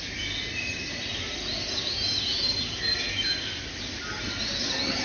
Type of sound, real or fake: real